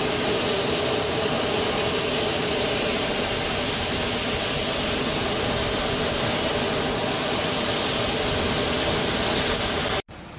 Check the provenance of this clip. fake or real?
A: real